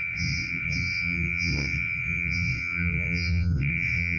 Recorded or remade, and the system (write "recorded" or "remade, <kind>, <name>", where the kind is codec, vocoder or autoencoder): remade, vocoder, WaveNeXt